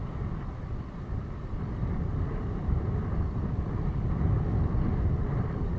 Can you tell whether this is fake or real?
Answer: real